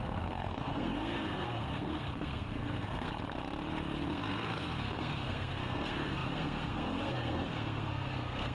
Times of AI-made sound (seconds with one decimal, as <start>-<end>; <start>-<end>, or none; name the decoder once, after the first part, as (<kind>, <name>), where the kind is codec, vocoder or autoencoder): 0.0-3.1 (codec, SNAC); 4.0-8.5